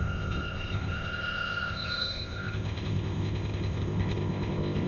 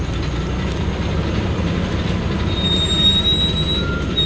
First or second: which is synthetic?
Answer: first